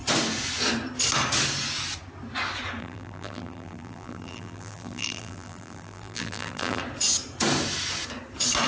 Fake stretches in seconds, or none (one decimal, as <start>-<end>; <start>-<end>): 2.8-6.8